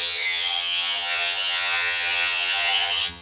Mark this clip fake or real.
fake